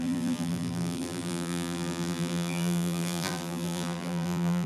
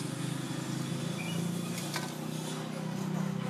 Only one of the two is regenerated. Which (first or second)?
first